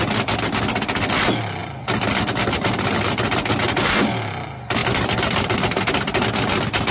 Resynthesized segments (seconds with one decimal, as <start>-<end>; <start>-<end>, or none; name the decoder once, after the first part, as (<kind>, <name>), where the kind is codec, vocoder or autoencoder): 1.6-2.2 (vocoder, BigVGAN v2); 4.8-5.8